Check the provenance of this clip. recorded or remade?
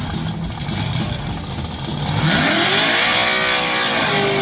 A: recorded